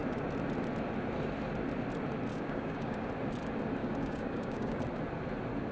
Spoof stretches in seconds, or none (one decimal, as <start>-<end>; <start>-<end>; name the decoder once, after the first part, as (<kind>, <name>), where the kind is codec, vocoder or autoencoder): 2.3-3.1 (codec, DAC); 3.8-4.8